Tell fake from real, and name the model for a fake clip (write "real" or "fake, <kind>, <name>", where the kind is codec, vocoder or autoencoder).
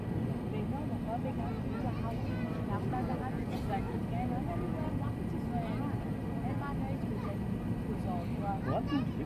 real